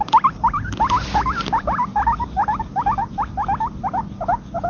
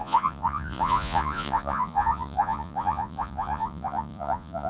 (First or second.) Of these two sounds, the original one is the first